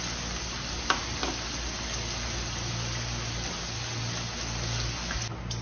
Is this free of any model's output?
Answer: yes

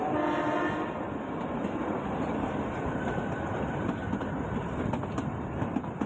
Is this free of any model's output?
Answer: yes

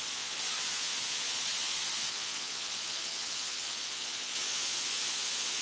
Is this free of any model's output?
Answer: no